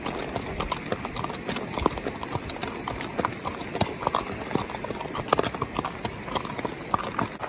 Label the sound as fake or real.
real